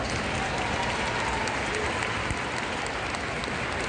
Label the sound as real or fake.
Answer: real